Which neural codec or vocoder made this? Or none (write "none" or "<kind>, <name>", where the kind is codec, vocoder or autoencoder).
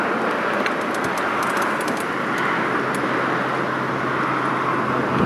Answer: none